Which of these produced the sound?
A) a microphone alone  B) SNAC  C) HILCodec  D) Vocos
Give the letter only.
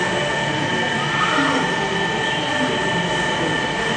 A